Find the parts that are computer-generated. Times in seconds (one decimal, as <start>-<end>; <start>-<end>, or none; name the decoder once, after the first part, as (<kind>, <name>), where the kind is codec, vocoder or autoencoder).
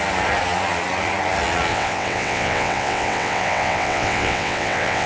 1.7-5.1 (vocoder, WaveNeXt)